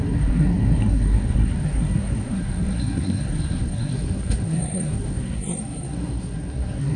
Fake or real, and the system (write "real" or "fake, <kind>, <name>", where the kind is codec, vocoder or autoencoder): fake, codec, SNAC